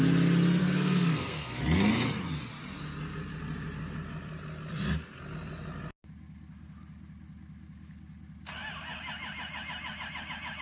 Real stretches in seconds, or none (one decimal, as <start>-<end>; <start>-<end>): 0.0-0.6; 1.6-10.6